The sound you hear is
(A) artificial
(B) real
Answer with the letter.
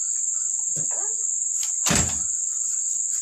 B